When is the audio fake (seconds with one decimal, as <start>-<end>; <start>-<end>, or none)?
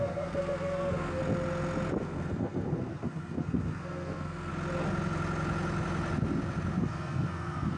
0.0-1.2; 2.0-4.5; 6.8-7.8